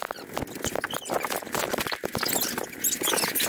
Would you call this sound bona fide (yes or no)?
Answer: yes